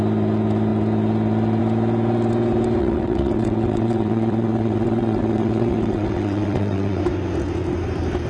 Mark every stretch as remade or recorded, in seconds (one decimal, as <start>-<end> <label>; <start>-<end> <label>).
0.0-2.8 recorded; 2.8-7.0 remade; 7.0-8.3 recorded